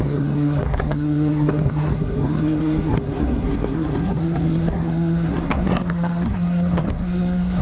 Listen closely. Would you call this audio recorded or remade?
remade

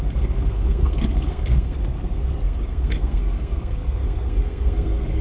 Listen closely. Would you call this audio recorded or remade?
remade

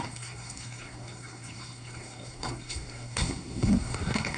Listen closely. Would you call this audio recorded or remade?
remade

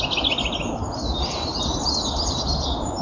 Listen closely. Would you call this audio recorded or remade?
recorded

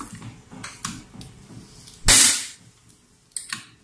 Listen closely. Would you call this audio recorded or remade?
recorded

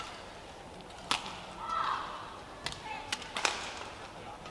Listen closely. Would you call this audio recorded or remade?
recorded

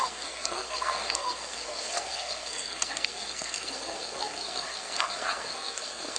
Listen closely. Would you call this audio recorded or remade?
remade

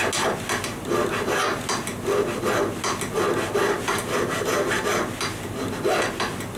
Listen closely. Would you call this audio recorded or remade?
recorded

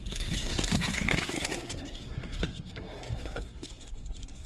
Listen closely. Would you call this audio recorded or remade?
remade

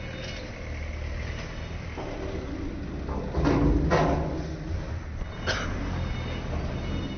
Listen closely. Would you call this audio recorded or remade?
recorded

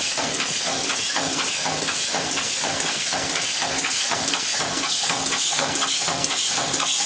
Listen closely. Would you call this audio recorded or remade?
remade